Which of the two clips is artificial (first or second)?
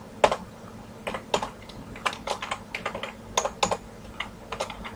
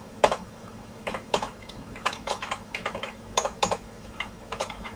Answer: second